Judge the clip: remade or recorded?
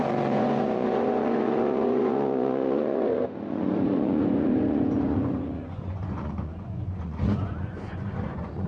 remade